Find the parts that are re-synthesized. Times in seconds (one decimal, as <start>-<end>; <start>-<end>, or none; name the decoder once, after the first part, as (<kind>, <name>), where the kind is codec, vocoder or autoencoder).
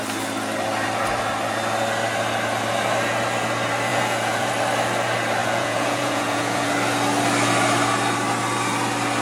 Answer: 3.9-4.5 (vocoder, Vocos); 5.4-6.7